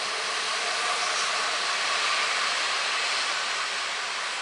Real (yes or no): yes